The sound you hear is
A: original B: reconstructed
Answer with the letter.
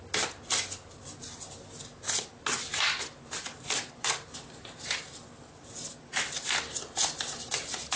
A